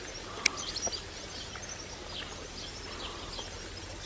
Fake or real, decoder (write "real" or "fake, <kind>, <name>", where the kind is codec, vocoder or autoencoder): real